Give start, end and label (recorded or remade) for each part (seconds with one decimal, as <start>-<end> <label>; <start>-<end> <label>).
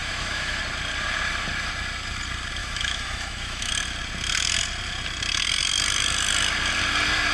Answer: 0.0-0.6 remade; 0.6-2.6 recorded; 2.6-3.7 remade; 3.7-7.3 recorded